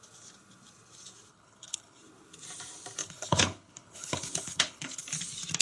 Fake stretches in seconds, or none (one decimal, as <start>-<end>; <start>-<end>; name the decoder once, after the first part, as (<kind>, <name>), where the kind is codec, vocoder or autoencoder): 1.3-2.0 (codec, HILCodec); 3.0-5.0